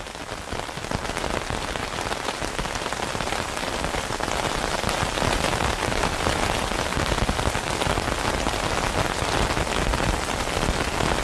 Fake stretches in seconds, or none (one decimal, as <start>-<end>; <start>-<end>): none